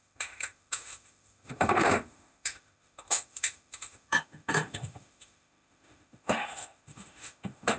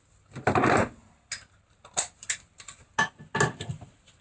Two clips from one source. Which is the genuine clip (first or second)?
second